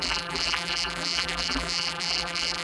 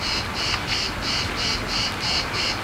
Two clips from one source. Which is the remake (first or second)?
first